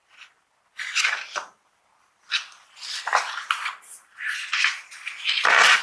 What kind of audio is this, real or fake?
real